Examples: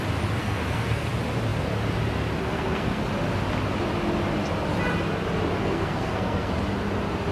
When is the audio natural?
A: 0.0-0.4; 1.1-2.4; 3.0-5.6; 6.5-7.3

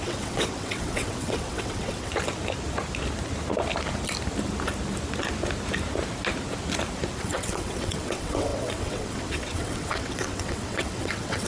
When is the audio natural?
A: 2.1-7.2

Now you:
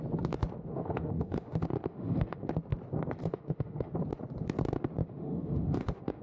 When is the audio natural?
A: 0.0-0.7; 2.5-3.3; 3.9-5.0

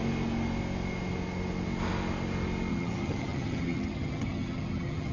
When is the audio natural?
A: 0.0-2.7